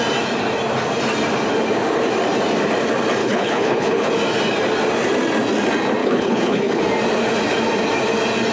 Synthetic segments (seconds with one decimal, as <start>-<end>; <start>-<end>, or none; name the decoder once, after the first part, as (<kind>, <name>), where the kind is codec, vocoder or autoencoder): 3.2-4.1 (codec, HILCodec); 6.0-6.8